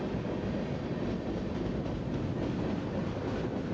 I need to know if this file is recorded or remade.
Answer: recorded